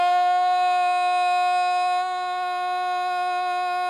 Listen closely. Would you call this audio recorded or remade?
remade